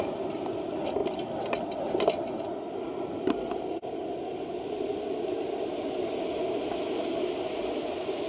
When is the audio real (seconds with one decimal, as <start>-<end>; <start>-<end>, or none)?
0.0-1.0; 6.0-8.3